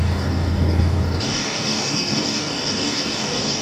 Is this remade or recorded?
remade